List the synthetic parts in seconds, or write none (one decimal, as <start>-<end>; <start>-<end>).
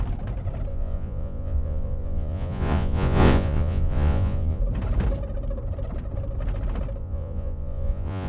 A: 0.7-4.6; 7.0-8.3